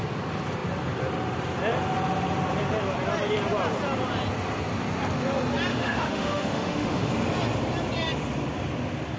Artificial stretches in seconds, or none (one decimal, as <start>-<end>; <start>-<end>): 5.7-7.1